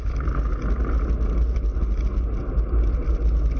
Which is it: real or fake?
real